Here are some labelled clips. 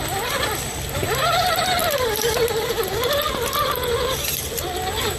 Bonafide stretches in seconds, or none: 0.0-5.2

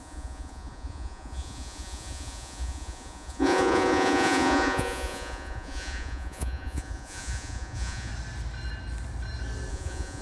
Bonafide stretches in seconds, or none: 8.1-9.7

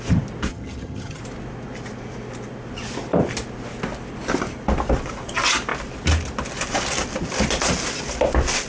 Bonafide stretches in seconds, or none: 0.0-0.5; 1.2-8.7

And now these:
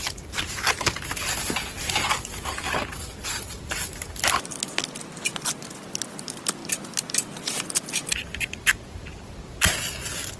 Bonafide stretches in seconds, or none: 0.0-10.4

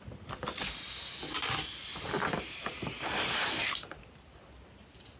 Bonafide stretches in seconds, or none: 0.0-1.9; 3.7-5.2

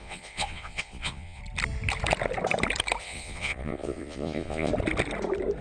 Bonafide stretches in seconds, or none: 1.4-3.0; 4.7-5.6

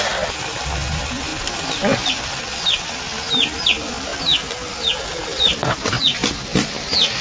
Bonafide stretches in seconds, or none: 0.0-7.2

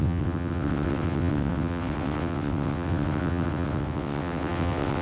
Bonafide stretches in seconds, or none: none